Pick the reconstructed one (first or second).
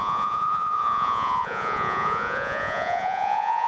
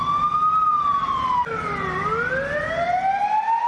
first